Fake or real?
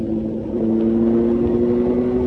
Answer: real